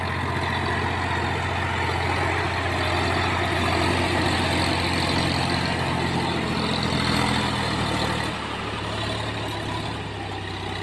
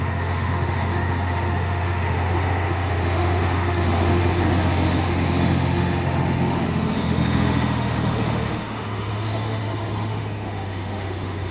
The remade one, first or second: second